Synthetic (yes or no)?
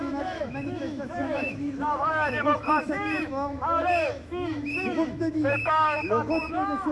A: yes